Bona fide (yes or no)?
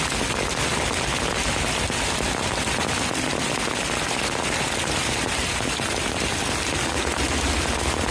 yes